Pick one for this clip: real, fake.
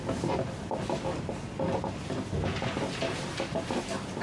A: real